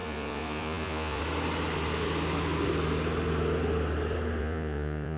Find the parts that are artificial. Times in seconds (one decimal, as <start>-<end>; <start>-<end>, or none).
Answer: 0.0-1.2; 4.4-5.2